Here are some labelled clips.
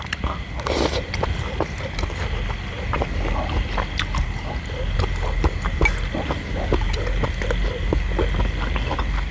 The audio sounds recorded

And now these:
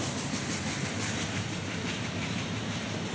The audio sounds recorded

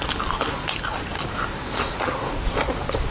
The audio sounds recorded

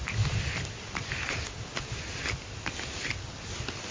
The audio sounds recorded